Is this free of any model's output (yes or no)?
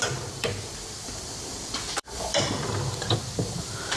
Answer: no